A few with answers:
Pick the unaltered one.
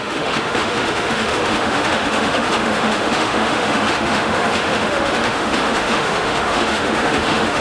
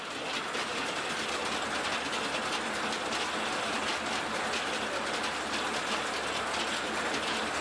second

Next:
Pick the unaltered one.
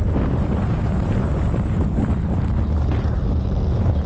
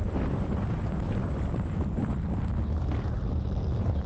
first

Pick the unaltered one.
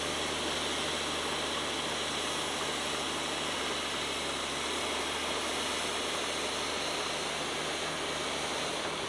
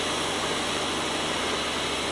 first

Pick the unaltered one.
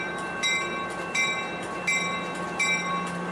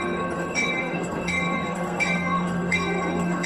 first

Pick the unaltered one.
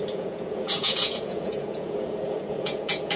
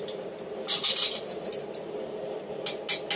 second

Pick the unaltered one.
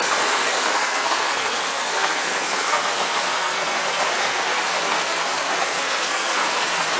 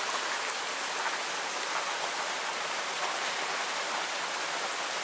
second